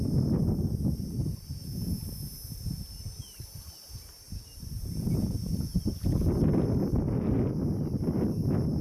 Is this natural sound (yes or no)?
yes